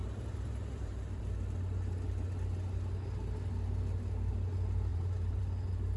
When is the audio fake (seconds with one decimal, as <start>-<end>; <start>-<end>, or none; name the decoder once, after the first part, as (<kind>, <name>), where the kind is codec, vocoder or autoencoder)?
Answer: 0.0-1.2 (vocoder, BigVGAN v2); 4.9-5.4